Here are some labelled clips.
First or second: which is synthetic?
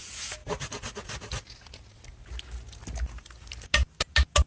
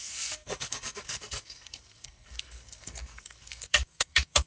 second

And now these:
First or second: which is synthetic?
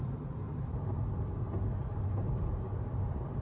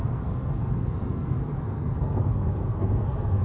second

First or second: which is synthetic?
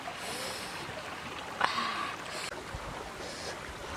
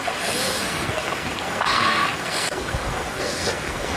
second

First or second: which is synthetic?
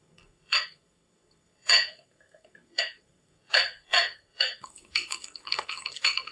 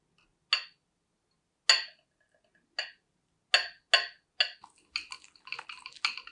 first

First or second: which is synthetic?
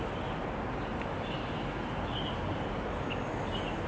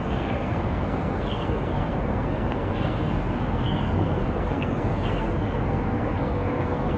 second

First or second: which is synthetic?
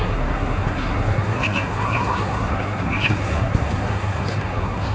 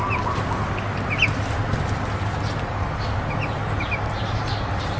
first